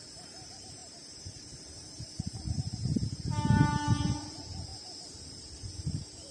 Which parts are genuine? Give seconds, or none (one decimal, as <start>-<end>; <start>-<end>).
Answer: 4.7-5.4